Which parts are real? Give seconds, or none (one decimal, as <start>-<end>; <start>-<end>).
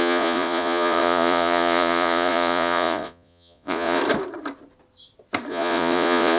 4.0-5.5